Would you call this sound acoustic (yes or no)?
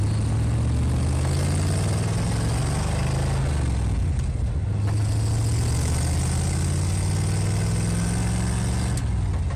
yes